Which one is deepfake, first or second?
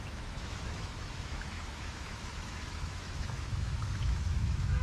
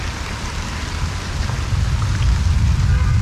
first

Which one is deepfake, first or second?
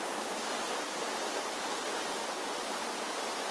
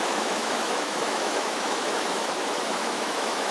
second